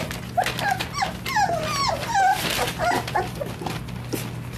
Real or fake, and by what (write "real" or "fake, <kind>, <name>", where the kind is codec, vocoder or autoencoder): real